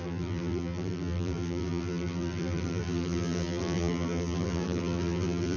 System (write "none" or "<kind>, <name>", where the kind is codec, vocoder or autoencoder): vocoder, BigVGAN v2